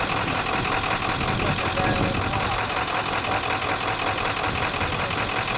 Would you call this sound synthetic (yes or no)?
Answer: no